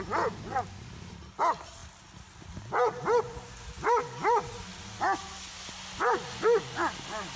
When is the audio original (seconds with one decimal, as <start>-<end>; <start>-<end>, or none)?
0.0-7.4